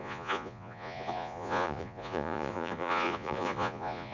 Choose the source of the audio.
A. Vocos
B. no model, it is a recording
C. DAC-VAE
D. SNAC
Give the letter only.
A